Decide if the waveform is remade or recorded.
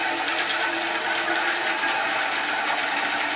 recorded